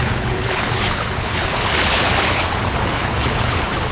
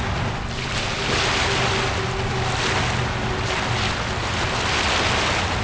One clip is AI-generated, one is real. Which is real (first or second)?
second